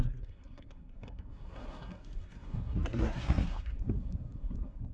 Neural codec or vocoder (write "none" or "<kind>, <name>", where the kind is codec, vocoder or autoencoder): codec, SNAC